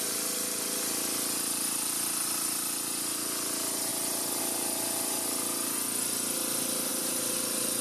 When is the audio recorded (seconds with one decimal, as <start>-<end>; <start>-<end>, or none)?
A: 0.0-6.9